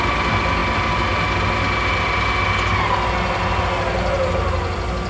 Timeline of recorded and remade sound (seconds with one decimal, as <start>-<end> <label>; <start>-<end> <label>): 0.0-5.1 recorded